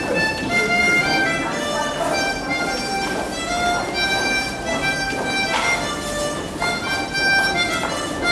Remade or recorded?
recorded